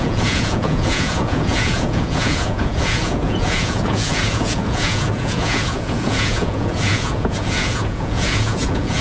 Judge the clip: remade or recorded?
remade